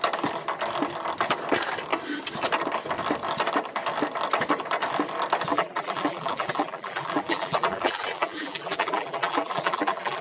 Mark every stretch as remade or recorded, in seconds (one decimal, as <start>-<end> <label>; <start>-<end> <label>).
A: 0.0-5.5 recorded; 5.5-10.2 remade